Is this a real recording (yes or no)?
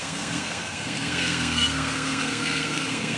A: no